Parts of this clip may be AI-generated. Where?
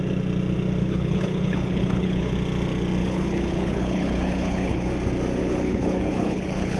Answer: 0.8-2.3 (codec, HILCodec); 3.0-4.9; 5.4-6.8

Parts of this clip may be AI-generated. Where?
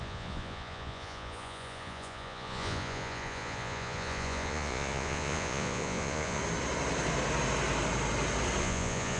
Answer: 0.0-6.4 (vocoder, Vocos); 8.6-9.2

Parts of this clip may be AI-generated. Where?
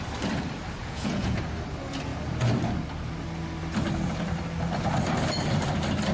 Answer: 0.8-1.4 (vocoder, Vocos)